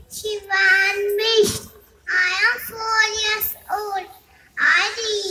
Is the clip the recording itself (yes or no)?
yes